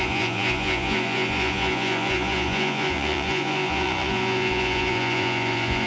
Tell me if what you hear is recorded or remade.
remade